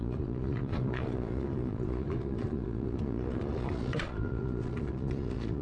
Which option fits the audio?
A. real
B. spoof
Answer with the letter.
B